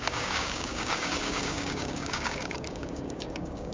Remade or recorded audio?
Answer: remade